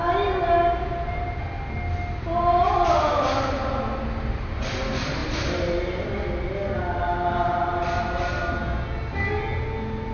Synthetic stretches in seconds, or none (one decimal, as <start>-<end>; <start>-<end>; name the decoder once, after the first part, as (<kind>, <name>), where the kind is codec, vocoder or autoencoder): none